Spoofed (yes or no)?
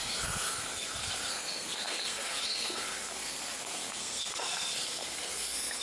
yes